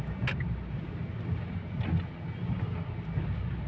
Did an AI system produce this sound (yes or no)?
no